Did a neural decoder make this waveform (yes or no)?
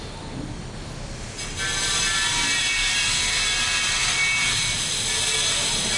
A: no